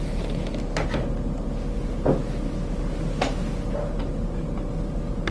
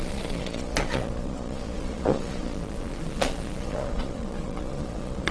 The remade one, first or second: second